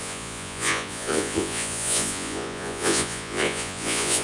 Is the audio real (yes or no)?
no